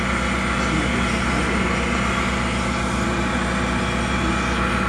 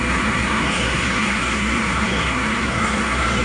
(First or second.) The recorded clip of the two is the first